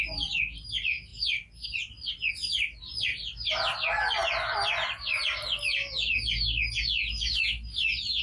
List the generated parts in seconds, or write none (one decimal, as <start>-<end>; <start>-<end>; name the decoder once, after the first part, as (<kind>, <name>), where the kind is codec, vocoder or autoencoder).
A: none